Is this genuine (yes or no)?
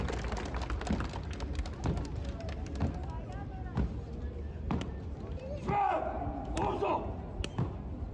yes